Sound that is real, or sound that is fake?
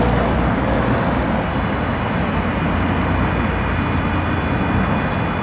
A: real